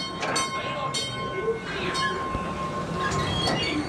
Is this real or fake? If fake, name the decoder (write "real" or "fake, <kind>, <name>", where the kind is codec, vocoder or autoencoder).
real